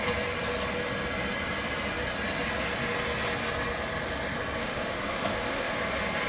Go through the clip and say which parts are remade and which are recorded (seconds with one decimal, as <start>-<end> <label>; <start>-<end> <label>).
0.0-4.6 recorded; 4.6-5.8 remade; 5.8-6.3 recorded